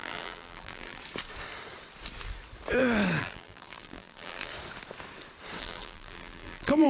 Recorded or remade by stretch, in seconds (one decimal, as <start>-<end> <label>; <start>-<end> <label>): 0.0-1.0 remade; 1.0-3.2 recorded; 3.2-4.5 remade; 4.5-5.6 recorded; 5.6-6.9 remade